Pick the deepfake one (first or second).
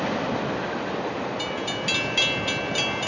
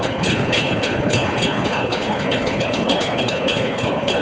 second